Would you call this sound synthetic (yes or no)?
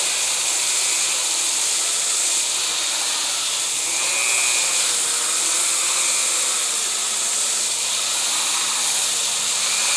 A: no